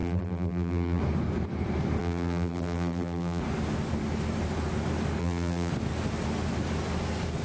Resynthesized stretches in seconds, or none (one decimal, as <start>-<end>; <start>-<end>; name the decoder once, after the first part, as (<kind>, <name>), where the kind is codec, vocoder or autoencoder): 0.0-1.0 (vocoder, BigVGAN v2); 2.0-3.4; 5.2-5.7